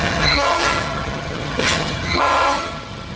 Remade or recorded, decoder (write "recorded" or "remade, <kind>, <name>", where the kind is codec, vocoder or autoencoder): remade, vocoder, HiFi-GAN